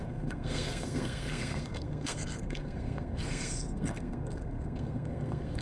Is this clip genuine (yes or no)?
no